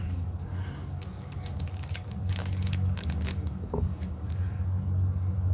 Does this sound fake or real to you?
fake